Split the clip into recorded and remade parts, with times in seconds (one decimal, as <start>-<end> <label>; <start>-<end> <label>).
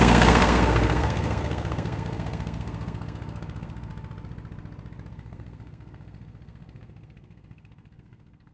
0.0-3.9 remade; 3.9-5.1 recorded; 5.1-8.5 remade